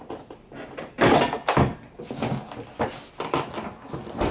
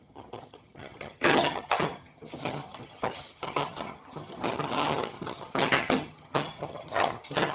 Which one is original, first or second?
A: first